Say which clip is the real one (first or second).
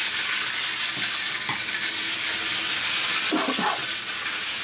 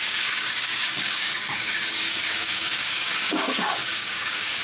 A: first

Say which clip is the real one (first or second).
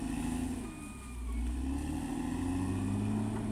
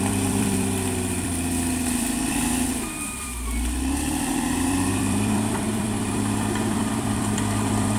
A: first